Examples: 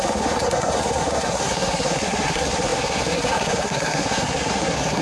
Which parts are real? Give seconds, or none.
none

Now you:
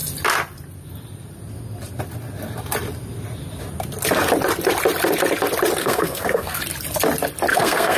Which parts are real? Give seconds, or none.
0.0-5.8; 6.6-7.5

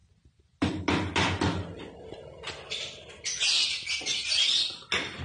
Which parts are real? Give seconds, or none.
0.0-5.2